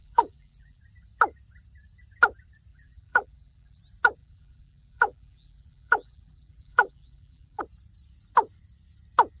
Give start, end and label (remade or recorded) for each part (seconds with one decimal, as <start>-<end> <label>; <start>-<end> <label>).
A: 0.0-0.8 remade; 0.8-2.7 recorded; 2.7-3.8 remade; 3.8-4.2 recorded; 4.2-7.6 remade; 7.6-9.4 recorded